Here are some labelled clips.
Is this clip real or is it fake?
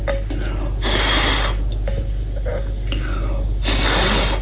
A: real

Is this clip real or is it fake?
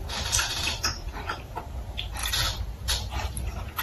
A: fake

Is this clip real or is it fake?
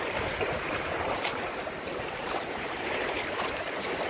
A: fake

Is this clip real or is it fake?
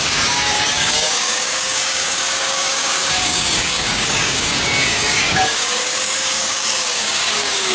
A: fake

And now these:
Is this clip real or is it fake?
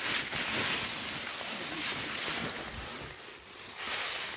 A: real